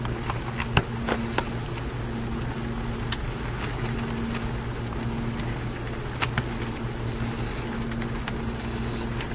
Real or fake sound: real